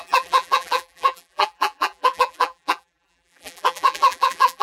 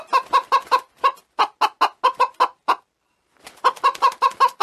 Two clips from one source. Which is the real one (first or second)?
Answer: second